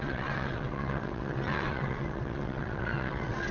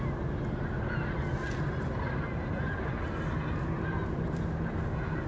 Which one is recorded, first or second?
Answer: second